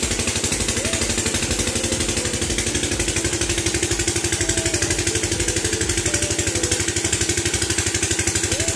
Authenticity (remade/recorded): recorded